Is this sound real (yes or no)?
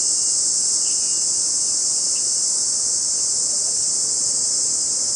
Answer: yes